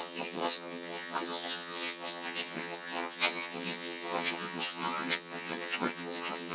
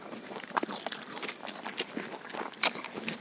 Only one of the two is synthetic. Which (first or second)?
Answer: first